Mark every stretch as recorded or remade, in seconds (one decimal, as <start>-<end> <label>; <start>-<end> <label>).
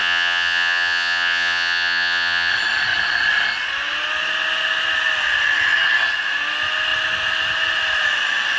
0.0-2.5 remade; 2.5-8.6 recorded